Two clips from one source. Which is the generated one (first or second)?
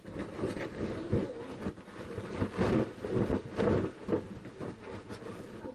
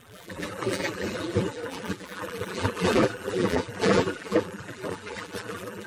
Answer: second